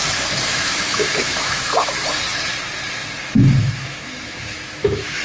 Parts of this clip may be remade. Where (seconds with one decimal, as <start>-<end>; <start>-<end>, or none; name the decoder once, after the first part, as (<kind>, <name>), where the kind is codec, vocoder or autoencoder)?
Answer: 0.5-1.9 (autoencoder, DAC-VAE); 3.6-5.2